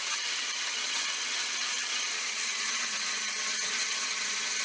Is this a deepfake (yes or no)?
yes